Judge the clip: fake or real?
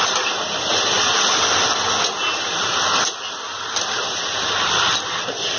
real